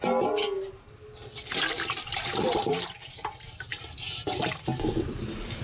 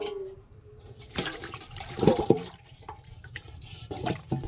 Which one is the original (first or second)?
first